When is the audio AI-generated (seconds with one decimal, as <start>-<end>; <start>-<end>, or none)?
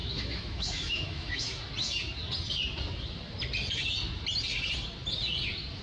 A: 0.0-1.6